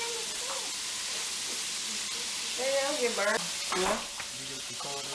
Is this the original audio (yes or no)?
yes